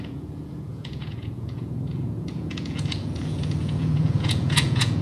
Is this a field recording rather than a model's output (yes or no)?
no